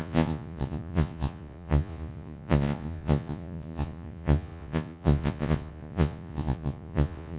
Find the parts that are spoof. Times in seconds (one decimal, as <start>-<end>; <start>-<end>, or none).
0.0-7.4